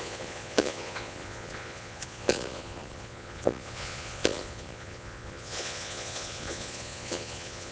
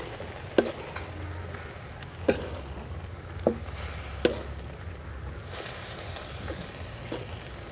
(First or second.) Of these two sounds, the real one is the second